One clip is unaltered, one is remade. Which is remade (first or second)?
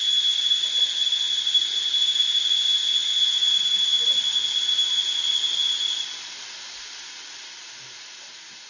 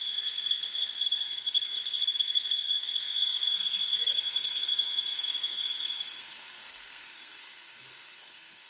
second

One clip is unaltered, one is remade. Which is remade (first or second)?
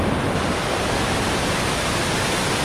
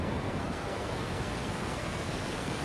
second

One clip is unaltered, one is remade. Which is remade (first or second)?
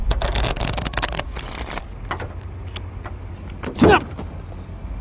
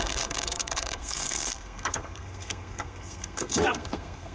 second